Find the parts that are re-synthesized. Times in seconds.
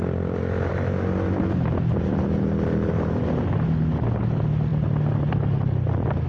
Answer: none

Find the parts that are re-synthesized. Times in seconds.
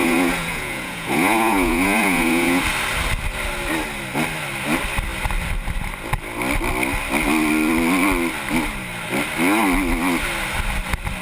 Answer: 0.0-2.6 (vocoder, Vocos)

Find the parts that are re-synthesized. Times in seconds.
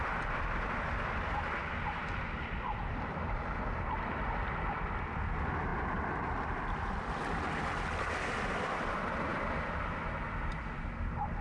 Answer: none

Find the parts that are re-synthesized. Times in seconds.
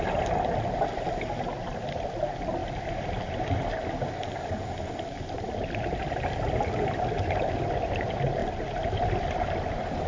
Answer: none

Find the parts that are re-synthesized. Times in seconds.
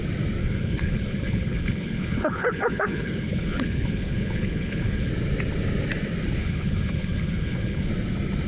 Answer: 0.4-5.1 (codec, HILCodec); 6.4-7.9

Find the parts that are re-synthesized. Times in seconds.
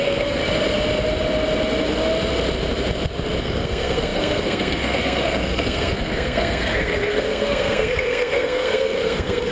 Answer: 0.0-0.4 (codec, SNAC); 3.4-9.5